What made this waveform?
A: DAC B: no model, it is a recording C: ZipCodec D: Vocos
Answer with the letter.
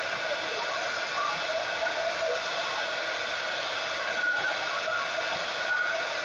B